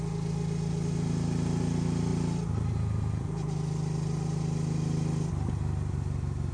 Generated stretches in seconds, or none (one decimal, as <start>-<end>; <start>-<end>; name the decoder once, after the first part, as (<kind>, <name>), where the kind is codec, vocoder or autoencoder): none